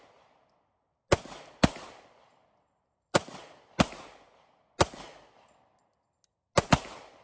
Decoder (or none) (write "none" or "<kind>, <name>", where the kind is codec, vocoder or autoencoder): none